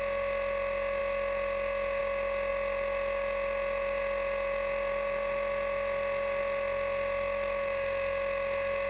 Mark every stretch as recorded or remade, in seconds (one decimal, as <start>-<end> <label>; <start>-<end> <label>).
0.0-8.9 recorded

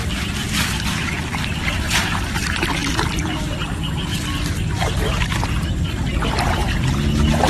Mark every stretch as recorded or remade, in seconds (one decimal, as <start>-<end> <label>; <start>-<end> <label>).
0.0-7.5 recorded

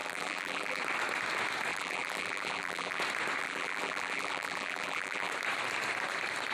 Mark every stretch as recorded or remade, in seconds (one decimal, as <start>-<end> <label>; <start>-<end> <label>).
0.0-0.8 remade; 0.8-1.7 recorded; 1.7-3.0 remade; 3.0-3.4 recorded; 3.4-5.3 remade; 5.3-6.5 recorded

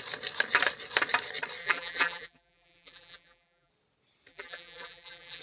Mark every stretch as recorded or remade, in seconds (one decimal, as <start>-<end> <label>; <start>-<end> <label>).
0.0-1.6 recorded; 1.6-3.7 remade; 3.7-4.3 recorded; 4.3-5.4 remade